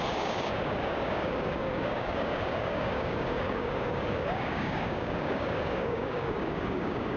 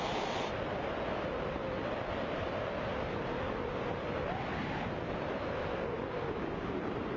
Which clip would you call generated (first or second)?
first